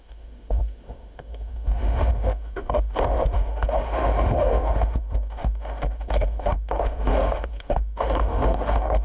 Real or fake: fake